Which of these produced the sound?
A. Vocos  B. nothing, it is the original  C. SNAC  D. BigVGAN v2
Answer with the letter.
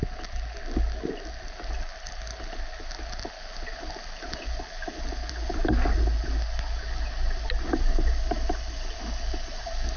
B